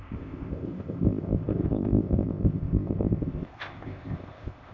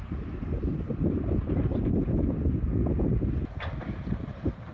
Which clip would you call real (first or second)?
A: second